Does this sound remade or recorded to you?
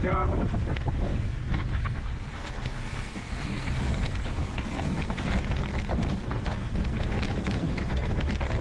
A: remade